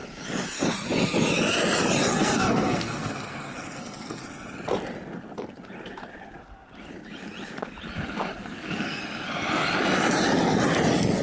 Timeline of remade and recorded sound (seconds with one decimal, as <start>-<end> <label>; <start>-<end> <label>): 0.0-2.1 recorded; 2.1-4.2 remade; 4.2-8.4 recorded; 8.4-9.0 remade; 9.0-11.2 recorded